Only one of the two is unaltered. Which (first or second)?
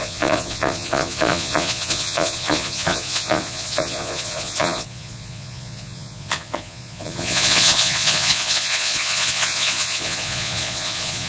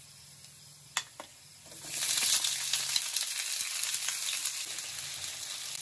second